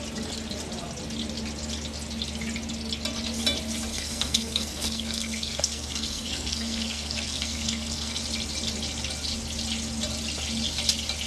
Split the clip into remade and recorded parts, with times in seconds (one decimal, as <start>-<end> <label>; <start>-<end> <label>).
0.0-3.9 recorded; 3.9-8.2 remade; 8.2-11.3 recorded

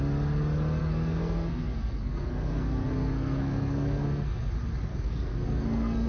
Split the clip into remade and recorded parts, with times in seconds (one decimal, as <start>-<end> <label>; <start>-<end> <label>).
0.0-0.8 recorded; 0.8-4.5 remade; 4.5-4.9 recorded; 4.9-6.1 remade

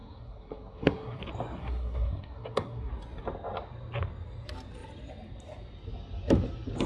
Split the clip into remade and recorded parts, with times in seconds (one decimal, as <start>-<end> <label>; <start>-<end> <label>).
0.0-1.2 remade; 1.2-1.6 recorded; 1.6-2.9 remade; 2.9-6.9 recorded